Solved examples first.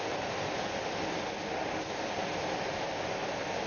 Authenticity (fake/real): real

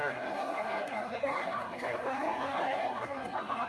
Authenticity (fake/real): fake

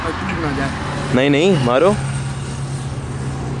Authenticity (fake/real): real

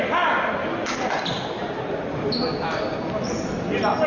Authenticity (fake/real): real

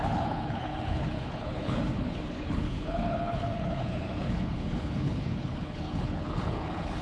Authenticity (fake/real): fake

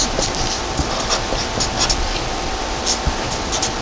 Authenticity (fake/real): real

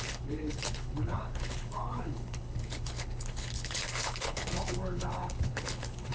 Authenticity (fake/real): fake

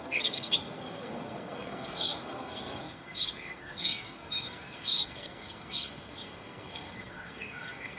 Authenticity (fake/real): fake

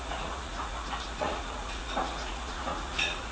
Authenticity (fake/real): fake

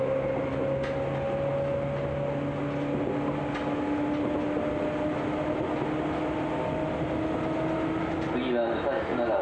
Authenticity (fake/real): real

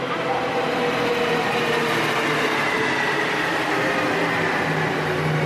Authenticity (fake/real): real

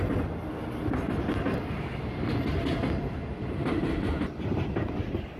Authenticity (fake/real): real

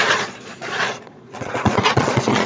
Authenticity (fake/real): fake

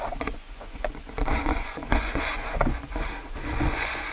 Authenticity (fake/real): fake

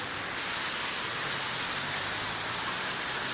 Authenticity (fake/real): real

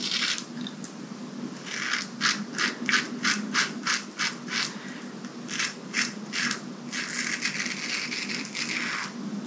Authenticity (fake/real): real